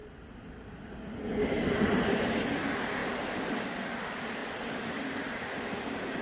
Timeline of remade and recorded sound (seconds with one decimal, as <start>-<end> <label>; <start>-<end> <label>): 0.0-1.4 remade; 1.4-3.0 recorded; 3.0-3.7 remade; 3.7-4.4 recorded; 4.4-5.0 remade; 5.0-6.2 recorded